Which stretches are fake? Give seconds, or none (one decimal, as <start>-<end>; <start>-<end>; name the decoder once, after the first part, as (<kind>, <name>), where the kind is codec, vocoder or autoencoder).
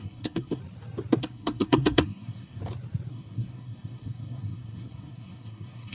0.0-0.6 (codec, SNAC); 1.2-2.6; 3.1-5.9